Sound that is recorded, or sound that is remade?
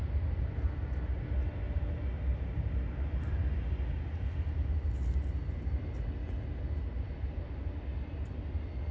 recorded